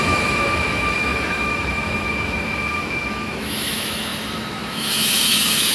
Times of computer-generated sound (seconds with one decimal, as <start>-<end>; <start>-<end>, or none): 0.0-5.7